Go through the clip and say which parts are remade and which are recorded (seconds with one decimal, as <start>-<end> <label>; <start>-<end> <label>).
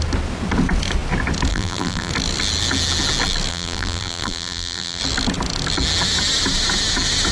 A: 0.0-1.5 recorded; 1.5-2.1 remade; 2.1-3.5 recorded; 3.5-5.0 remade; 5.0-7.3 recorded